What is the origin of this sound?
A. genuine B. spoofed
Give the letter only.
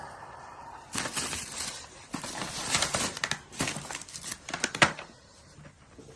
A